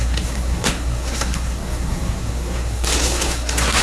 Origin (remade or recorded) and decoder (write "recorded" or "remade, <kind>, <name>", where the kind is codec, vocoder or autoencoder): remade, codec, SNAC